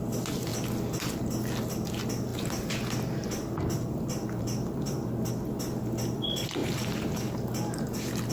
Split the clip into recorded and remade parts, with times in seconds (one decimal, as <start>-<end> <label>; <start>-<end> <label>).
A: 0.0-8.3 recorded